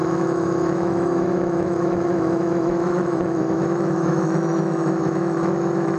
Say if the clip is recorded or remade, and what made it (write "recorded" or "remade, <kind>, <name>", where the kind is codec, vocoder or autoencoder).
remade, autoencoder, DAC-VAE